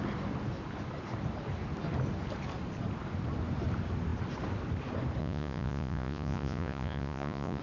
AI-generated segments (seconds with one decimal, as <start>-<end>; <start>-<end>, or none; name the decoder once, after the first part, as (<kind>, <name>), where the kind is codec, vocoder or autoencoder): 5.2-7.6 (vocoder, Vocos)